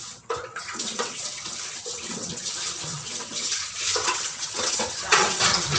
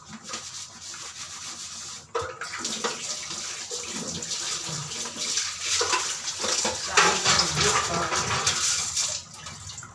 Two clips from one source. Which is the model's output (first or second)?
first